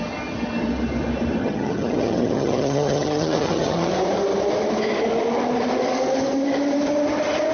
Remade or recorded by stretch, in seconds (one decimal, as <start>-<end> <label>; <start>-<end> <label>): 0.0-1.4 recorded; 1.4-3.9 remade; 3.9-7.5 recorded